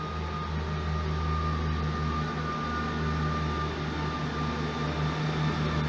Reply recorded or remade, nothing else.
recorded